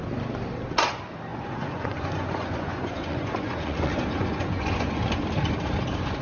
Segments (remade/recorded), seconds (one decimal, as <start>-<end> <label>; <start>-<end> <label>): 0.0-1.3 recorded; 1.3-5.0 remade; 5.0-6.2 recorded